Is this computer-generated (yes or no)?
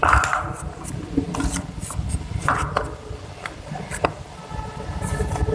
no